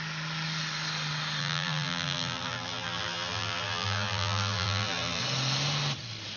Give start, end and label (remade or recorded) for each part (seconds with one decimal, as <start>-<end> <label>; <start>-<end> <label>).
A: 0.0-1.4 recorded; 1.4-5.2 remade; 5.2-6.4 recorded